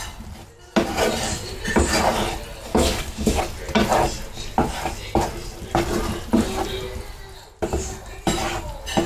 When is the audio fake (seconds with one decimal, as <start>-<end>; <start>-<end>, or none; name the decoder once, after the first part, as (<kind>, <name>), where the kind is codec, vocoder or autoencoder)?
2.7-3.4 (codec, DAC)